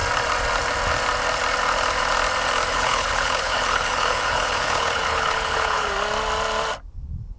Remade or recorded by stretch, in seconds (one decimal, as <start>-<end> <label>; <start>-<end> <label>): 0.0-2.7 recorded; 2.7-5.9 remade; 5.9-7.4 recorded